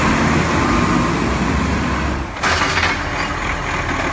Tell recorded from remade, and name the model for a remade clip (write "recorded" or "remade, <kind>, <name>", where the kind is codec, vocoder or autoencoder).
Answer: recorded